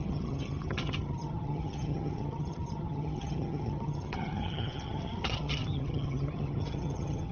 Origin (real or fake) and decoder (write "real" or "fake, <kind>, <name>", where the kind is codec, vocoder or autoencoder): fake, vocoder, HiFi-GAN